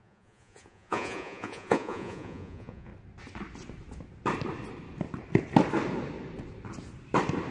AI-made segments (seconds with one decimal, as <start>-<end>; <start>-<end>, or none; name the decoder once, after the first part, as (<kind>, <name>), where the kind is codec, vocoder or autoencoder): 0.0-2.9 (vocoder, Vocos)